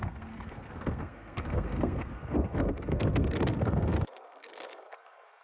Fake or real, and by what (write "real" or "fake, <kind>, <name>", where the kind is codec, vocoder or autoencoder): fake, codec, SNAC